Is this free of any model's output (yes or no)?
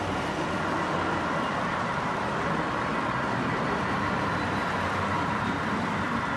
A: no